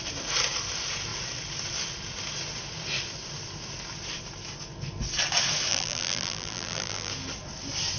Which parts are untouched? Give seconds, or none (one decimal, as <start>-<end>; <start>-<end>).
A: 0.0-5.7; 7.1-8.0